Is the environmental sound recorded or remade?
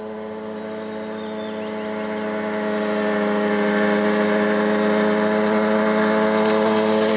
recorded